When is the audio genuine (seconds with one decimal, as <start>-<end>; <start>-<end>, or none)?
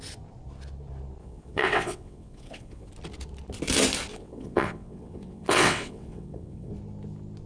0.0-1.2; 2.9-4.1; 6.7-7.5